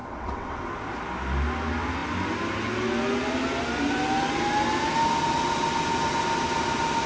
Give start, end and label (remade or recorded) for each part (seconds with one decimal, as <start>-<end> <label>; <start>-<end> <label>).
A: 0.0-0.6 remade; 0.6-7.1 recorded